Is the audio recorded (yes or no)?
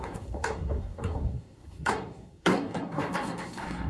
no